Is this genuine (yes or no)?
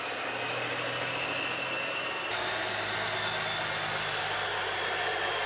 yes